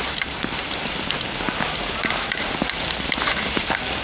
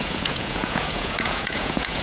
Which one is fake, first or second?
second